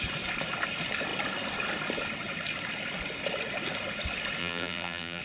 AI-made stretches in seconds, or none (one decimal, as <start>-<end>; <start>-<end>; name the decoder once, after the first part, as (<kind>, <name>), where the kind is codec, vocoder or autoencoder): 4.4-5.2 (vocoder, BigVGAN v2)